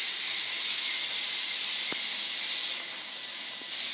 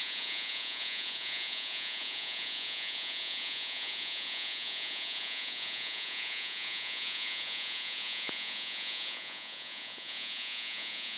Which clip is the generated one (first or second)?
second